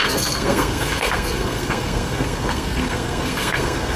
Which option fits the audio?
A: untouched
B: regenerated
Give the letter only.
B